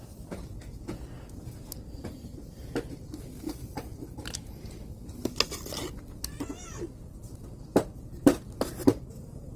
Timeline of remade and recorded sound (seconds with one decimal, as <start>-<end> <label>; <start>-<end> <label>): 0.0-9.6 recorded